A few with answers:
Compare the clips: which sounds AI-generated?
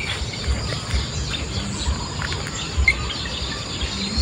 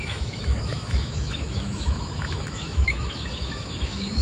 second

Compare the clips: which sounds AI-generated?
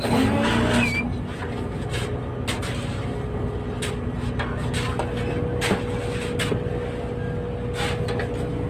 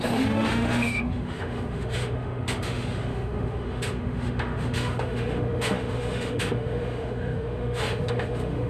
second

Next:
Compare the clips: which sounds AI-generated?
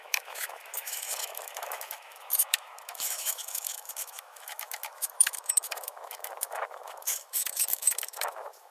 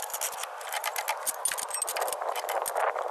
first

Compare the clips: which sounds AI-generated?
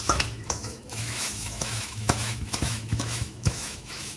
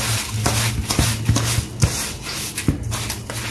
first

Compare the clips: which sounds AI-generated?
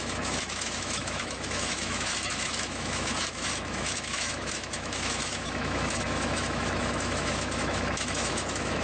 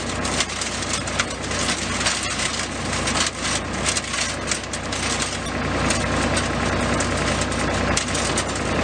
first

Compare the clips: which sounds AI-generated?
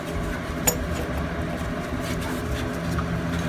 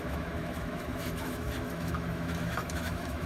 second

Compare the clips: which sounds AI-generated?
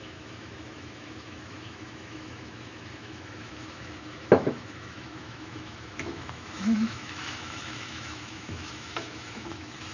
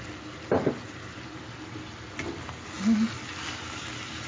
first